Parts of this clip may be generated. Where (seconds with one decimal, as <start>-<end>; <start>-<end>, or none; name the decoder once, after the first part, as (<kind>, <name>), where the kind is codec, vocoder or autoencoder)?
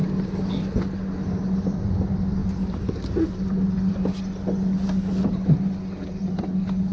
none